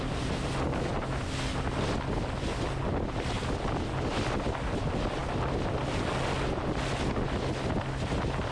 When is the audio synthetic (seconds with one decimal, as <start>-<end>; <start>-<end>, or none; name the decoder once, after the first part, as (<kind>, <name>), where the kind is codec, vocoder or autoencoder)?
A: none